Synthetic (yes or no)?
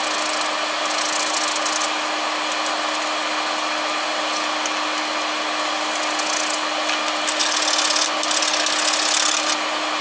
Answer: no